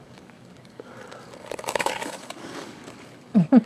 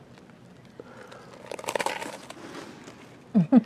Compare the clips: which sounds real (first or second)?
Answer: second